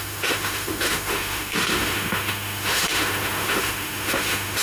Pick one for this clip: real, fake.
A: fake